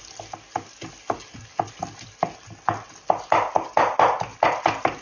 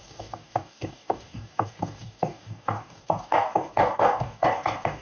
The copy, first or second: second